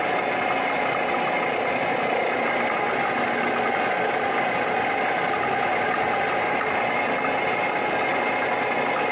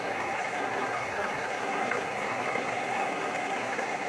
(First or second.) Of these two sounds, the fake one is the second